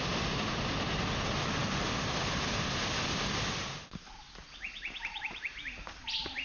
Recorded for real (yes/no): yes